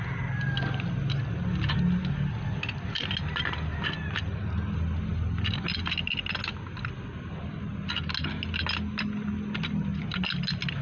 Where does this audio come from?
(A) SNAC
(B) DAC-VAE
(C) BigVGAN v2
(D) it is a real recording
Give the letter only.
D